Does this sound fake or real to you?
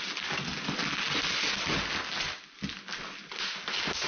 real